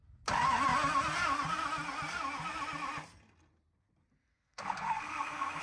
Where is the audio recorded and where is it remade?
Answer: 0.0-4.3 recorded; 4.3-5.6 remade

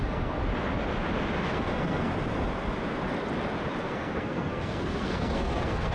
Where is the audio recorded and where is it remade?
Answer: 0.0-0.4 remade; 0.4-1.4 recorded; 1.4-2.1 remade; 2.1-3.8 recorded; 3.8-5.9 remade

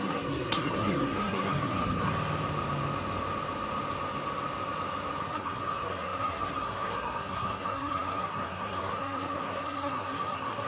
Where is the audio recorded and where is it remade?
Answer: 0.0-2.1 remade; 2.1-5.2 recorded; 5.2-10.7 remade

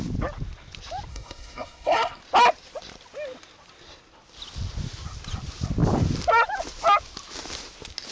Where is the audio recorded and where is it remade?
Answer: 0.0-1.1 recorded; 1.1-2.2 remade; 2.2-8.1 recorded

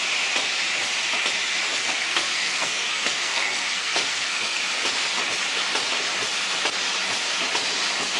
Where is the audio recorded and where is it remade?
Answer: 0.0-1.7 recorded; 1.7-4.6 remade; 4.6-8.2 recorded

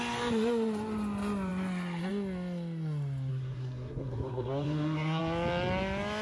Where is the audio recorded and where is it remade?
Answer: 0.0-3.3 recorded; 3.3-5.2 remade; 5.2-6.2 recorded